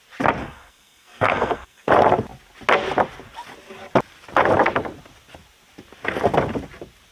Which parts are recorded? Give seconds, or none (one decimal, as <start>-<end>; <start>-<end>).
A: 0.0-0.4; 1.9-7.1